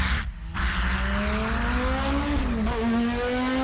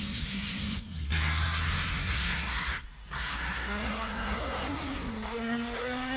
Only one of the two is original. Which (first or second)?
first